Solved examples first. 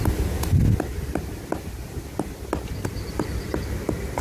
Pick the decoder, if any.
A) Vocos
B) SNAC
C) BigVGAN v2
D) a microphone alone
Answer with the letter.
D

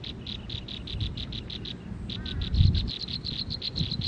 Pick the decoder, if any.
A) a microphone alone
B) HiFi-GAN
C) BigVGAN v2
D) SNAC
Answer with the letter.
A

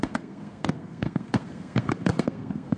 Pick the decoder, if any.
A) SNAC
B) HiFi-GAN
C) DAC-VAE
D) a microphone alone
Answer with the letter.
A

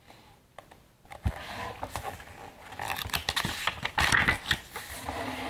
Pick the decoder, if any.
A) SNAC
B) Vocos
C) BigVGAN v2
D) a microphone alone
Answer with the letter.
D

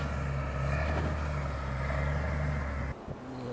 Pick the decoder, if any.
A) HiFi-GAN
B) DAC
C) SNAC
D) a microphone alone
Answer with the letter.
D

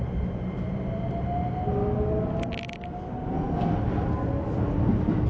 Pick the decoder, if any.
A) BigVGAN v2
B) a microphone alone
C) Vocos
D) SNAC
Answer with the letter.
B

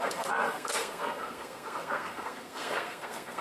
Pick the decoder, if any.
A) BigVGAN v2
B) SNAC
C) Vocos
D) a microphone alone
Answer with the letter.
B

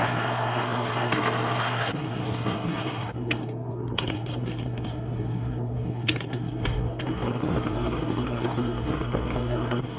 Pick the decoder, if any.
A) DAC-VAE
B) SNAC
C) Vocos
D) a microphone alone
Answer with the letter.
B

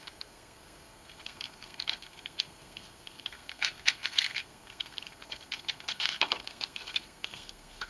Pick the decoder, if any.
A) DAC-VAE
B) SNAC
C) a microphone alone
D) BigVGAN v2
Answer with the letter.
B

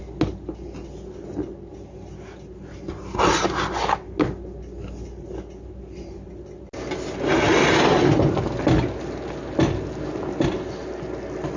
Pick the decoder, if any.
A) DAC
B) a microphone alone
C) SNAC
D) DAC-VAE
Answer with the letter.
B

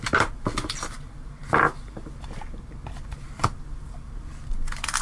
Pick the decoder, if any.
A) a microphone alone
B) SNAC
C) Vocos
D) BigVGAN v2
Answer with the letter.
A